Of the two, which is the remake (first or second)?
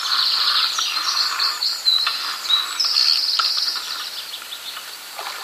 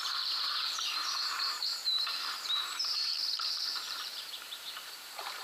second